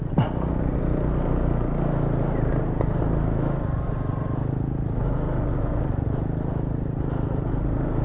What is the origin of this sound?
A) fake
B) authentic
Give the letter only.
B